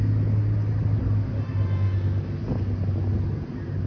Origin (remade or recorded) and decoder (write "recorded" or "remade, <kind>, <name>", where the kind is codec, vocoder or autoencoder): recorded